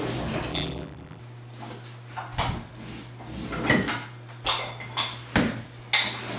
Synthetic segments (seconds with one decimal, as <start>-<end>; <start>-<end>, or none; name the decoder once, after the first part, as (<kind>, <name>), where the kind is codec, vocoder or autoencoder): 0.5-1.2 (vocoder, BigVGAN v2)